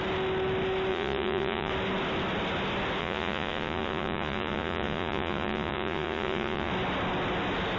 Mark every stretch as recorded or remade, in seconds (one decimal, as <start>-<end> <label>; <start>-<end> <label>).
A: 0.0-0.9 recorded; 0.9-1.7 remade; 1.7-3.0 recorded; 3.0-6.7 remade; 6.7-7.8 recorded